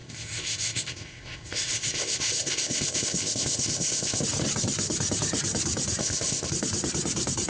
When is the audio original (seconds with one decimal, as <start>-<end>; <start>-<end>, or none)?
4.2-6.0; 6.5-7.5